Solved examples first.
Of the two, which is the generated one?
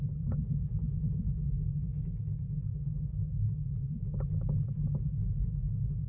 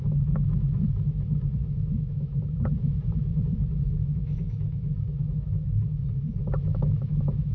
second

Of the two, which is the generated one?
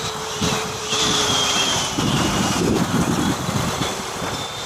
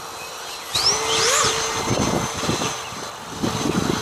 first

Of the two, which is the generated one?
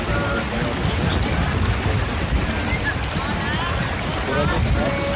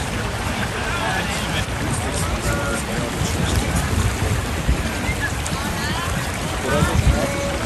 second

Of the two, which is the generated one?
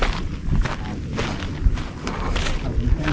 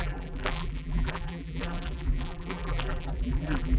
second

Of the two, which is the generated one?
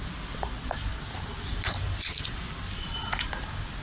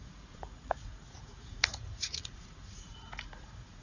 second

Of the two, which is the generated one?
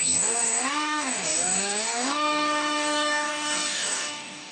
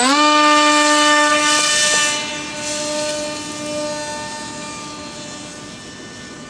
first